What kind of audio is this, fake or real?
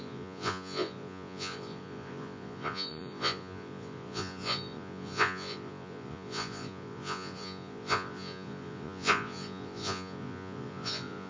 fake